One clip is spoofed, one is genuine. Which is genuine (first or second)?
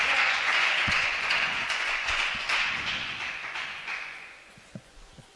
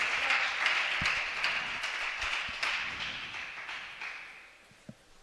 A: second